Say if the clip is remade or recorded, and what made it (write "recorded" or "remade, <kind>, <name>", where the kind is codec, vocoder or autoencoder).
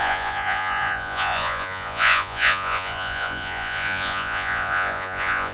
remade, vocoder, Vocos